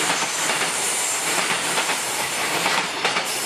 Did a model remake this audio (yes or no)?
yes